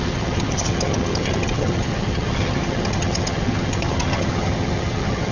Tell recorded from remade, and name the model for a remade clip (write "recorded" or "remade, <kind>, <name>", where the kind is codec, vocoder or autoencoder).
remade, vocoder, HiFi-GAN